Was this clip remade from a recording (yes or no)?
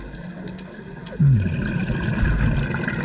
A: no